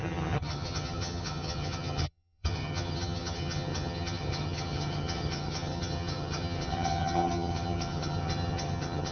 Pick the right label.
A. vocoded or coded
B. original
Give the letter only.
A